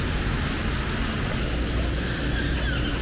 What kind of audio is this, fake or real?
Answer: real